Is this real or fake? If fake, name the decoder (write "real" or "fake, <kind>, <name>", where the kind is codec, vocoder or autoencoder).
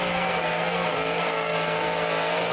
fake, codec, SNAC